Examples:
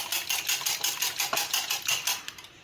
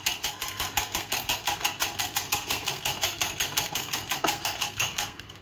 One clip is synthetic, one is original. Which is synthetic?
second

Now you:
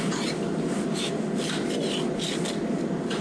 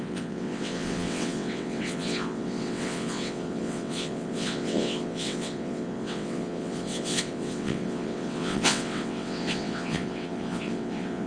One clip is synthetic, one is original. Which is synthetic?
second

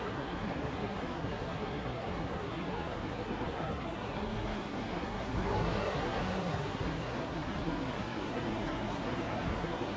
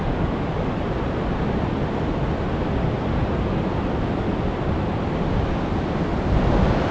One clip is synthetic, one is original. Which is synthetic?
first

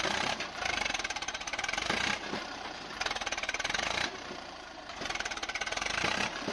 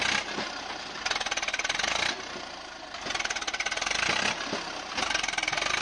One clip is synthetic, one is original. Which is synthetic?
first